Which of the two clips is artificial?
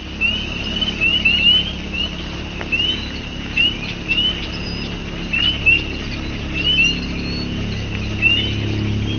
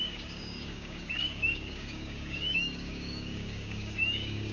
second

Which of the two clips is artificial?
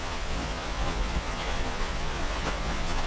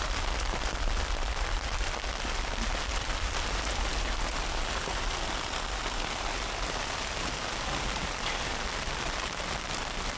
first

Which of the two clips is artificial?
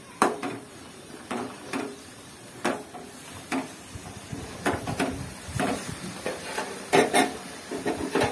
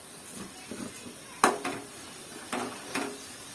first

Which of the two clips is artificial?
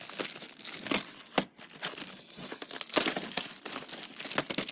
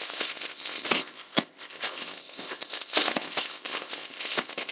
second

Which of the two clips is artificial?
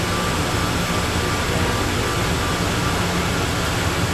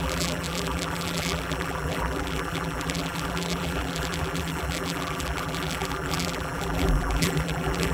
second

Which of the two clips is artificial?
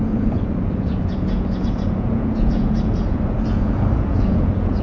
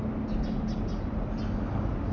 first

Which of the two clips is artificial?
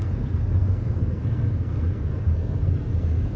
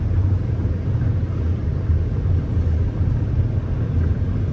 first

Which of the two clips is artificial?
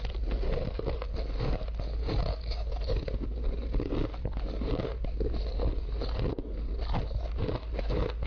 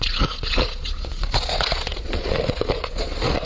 second